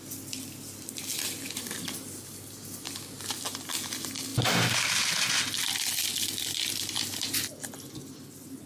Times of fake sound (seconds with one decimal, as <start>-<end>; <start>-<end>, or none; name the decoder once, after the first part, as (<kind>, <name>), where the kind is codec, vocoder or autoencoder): none